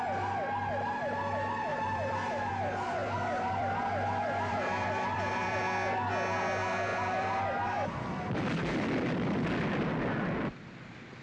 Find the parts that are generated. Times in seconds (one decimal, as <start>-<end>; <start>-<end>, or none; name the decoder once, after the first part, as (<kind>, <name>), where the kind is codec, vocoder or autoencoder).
1.7-2.5 (vocoder, BigVGAN v2); 3.0-5.6; 6.9-9.9